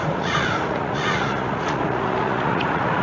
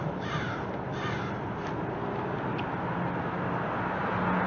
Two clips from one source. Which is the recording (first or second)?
second